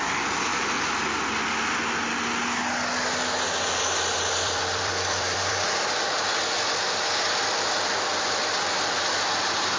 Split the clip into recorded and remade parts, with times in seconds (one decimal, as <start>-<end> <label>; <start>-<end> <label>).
0.0-0.5 remade; 0.5-4.2 recorded; 4.2-9.8 remade